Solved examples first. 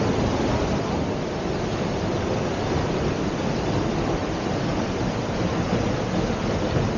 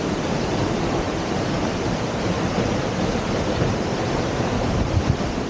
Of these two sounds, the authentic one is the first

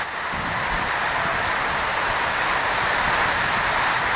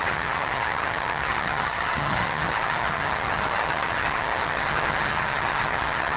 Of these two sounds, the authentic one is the first